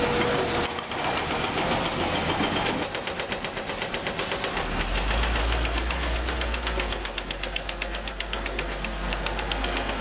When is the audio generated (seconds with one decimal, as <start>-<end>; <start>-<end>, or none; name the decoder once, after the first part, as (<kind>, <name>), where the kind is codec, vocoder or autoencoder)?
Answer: 5.4-10.0 (codec, SNAC)